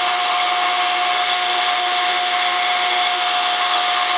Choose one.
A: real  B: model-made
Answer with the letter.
B